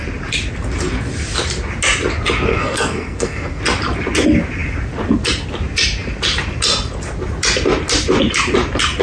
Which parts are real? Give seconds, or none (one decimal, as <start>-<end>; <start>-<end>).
0.0-2.5; 3.6-9.0